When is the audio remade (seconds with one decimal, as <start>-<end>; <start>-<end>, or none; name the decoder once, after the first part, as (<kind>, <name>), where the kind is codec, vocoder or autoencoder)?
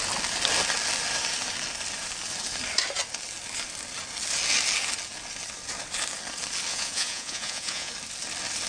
6.7-7.9 (vocoder, Vocos)